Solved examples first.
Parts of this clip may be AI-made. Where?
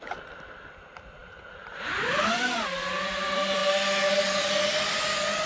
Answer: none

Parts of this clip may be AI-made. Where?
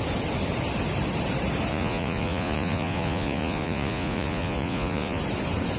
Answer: 1.7-5.2 (vocoder, Vocos)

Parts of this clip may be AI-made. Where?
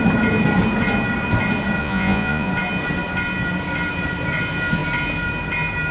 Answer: 1.8-2.5 (vocoder, Vocos)